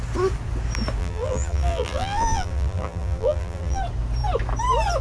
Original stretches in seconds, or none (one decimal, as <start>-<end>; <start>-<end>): 0.0-1.0; 3.8-5.0